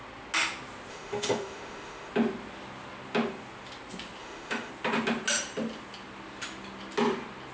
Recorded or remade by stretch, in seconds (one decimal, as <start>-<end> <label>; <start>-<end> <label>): 0.0-0.9 recorded; 0.9-2.1 remade; 2.1-4.2 recorded; 4.2-4.7 remade; 4.7-7.5 recorded